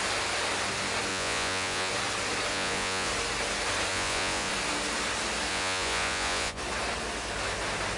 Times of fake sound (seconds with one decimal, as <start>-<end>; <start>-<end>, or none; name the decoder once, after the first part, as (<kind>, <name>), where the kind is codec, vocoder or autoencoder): 1.1-1.9 (vocoder, Vocos); 2.5-3.1; 3.9-4.5; 5.5-6.6

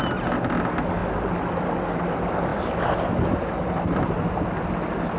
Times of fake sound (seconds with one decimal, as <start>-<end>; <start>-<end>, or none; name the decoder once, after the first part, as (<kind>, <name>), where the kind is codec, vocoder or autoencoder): none

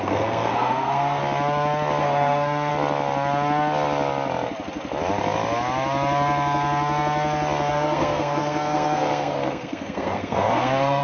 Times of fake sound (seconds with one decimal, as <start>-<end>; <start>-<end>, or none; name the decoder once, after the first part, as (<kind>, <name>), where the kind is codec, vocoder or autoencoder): 0.0-1.2 (codec, SNAC); 2.0-2.7; 7.7-11.0

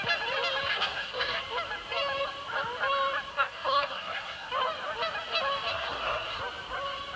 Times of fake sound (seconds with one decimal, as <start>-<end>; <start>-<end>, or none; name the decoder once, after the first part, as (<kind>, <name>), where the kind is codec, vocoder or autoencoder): 0.7-1.4 (codec, SNAC); 3.3-4.5; 5.7-6.4

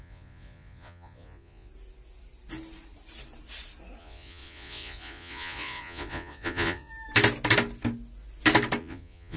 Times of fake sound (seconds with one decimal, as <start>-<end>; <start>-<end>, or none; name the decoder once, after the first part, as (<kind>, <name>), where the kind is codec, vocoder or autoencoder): 0.0-1.7 (vocoder, Vocos); 4.0-6.9; 8.8-9.4

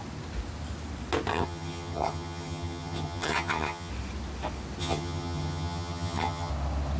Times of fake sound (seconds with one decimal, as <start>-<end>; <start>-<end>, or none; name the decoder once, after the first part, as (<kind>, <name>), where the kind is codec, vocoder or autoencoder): 1.3-3.9 (vocoder, HiFi-GAN); 4.8-6.5

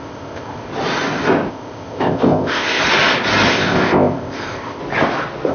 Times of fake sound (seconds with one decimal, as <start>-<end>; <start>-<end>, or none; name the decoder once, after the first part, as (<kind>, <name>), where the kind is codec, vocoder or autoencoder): 0.0-0.7 (codec, ZipCodec); 1.5-2.8; 3.5-4.8

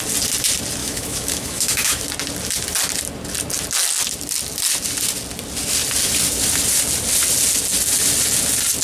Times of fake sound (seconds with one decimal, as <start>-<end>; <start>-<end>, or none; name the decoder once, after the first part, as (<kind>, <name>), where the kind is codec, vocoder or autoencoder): 0.8-2.0 (autoencoder, DAC-VAE)